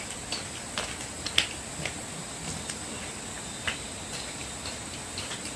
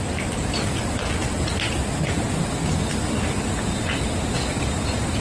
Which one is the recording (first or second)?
first